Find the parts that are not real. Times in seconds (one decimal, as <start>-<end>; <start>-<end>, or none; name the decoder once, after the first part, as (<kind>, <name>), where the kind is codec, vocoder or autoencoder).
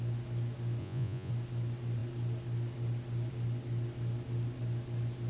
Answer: 0.8-1.3 (vocoder, Vocos)